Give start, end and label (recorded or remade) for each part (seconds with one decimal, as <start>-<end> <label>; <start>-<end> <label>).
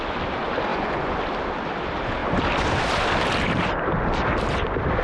0.0-0.7 recorded; 0.7-1.2 remade; 1.2-5.0 recorded